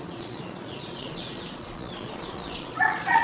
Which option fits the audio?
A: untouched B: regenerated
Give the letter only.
B